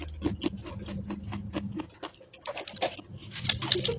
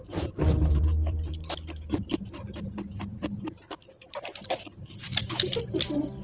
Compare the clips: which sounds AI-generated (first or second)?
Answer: second